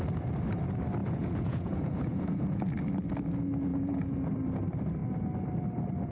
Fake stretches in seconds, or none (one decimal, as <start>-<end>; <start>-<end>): 1.0-2.6; 3.7-4.3